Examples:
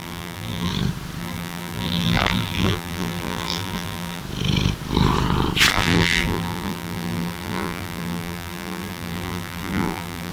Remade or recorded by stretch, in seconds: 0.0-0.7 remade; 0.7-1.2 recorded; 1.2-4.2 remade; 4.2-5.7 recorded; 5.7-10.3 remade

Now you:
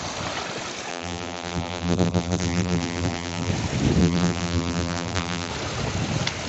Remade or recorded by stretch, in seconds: 0.0-0.9 recorded; 0.9-3.5 remade; 3.5-4.0 recorded; 4.0-5.5 remade; 5.5-6.5 recorded

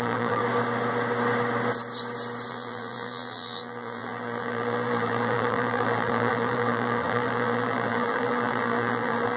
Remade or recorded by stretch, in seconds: 0.0-0.4 remade; 0.4-2.5 recorded; 2.5-9.4 remade